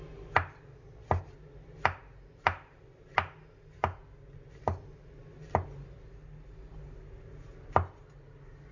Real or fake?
real